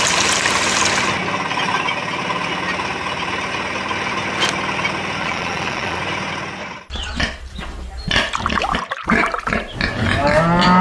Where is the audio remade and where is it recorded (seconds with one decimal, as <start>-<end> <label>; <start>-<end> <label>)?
0.0-5.2 recorded; 5.2-6.0 remade; 6.0-6.6 recorded; 6.6-7.2 remade; 7.2-10.8 recorded

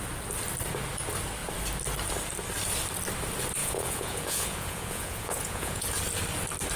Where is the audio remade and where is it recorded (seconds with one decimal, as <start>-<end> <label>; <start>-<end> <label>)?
0.0-3.6 recorded; 3.6-6.0 remade; 6.0-6.8 recorded

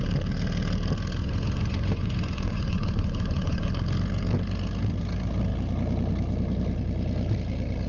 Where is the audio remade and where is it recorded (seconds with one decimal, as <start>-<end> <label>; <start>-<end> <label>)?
0.0-1.2 recorded; 1.2-3.7 remade; 3.7-7.9 recorded

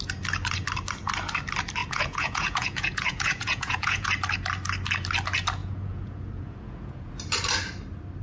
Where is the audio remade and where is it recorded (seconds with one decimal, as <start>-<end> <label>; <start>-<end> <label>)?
0.0-1.8 recorded; 1.8-4.1 remade; 4.1-5.6 recorded; 5.6-7.1 remade; 7.1-8.2 recorded

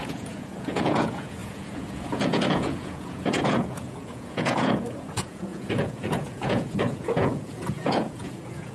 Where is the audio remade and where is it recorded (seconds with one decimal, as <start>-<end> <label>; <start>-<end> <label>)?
0.0-8.7 remade

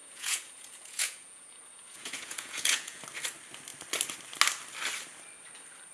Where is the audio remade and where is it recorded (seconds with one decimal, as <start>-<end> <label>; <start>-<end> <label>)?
0.0-3.0 remade; 3.0-5.9 recorded

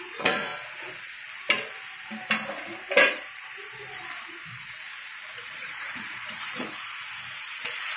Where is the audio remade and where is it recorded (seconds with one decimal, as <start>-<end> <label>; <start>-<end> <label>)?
0.0-0.5 remade; 0.5-5.3 recorded; 5.3-8.0 remade

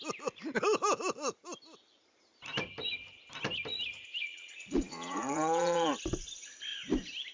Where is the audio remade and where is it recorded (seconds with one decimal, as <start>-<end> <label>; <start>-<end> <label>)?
0.0-4.2 recorded; 4.2-5.9 remade; 5.9-7.3 recorded